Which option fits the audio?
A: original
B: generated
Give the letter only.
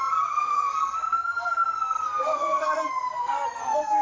B